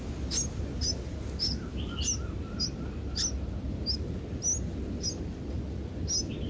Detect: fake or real real